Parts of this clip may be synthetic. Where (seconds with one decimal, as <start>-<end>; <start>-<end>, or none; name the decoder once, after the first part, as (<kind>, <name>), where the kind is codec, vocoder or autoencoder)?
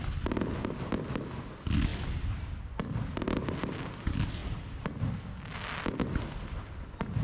none